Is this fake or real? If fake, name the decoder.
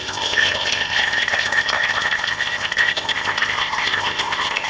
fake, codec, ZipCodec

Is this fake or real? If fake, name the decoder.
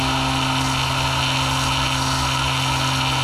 real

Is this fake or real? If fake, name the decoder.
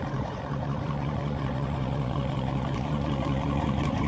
fake, vocoder, Vocos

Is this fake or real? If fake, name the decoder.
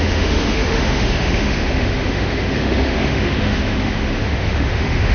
fake, autoencoder, DAC-VAE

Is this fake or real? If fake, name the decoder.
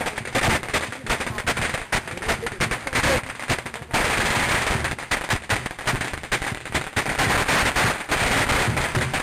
real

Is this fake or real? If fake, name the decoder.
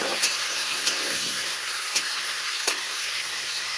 fake, codec, SNAC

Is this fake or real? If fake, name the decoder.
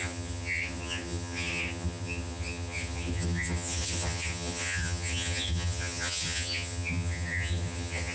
fake, vocoder, HiFi-GAN